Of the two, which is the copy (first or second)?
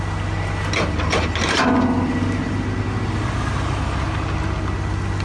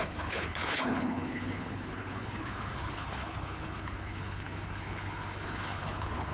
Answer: second